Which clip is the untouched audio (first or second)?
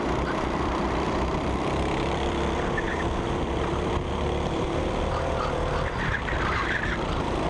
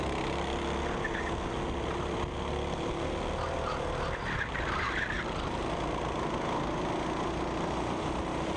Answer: second